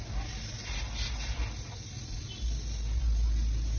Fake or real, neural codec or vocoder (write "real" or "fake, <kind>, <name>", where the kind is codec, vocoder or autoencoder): real